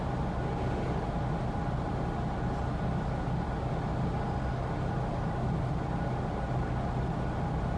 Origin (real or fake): real